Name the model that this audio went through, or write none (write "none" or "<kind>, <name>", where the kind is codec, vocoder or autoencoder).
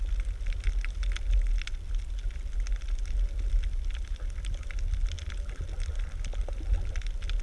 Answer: none